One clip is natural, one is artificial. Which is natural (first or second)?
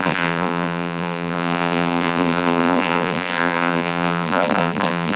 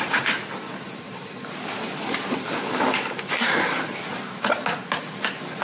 second